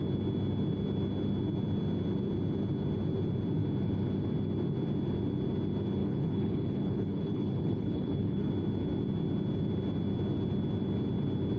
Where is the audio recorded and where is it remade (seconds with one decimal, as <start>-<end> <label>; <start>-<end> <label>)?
0.0-6.0 recorded; 6.0-8.5 remade; 8.5-11.6 recorded

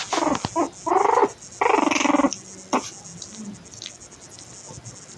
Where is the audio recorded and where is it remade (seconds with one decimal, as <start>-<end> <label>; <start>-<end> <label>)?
0.0-5.2 recorded